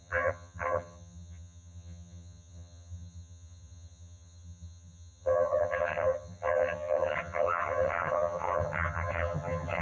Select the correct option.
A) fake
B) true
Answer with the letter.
A